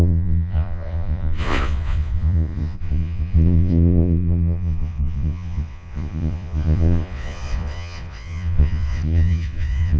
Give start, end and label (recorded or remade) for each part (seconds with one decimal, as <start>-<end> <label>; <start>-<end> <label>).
0.0-10.0 remade